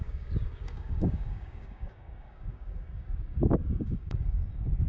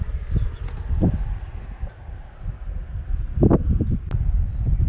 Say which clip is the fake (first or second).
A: first